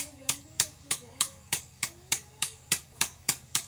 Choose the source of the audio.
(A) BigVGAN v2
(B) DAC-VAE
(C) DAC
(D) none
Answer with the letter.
C